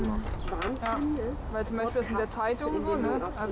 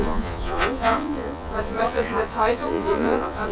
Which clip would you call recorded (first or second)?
first